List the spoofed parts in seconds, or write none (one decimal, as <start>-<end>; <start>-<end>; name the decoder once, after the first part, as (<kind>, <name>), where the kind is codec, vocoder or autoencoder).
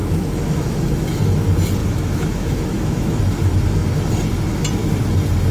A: 0.0-1.2 (autoencoder, DAC-VAE); 1.8-3.2